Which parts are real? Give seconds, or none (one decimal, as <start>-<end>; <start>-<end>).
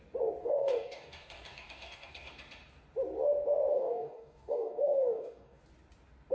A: 0.0-0.4; 2.3-3.7; 5.6-6.3